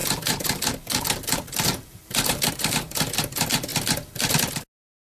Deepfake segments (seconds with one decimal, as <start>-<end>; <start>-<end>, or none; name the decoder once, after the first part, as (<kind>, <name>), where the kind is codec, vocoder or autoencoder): 0.0-2.5 (vocoder, BigVGAN v2)